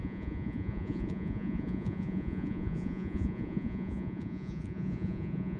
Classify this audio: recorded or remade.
remade